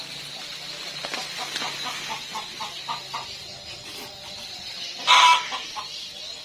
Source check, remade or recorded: recorded